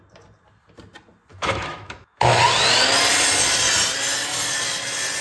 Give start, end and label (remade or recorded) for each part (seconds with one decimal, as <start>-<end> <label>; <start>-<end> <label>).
0.0-1.3 recorded; 1.3-2.4 remade; 2.4-5.2 recorded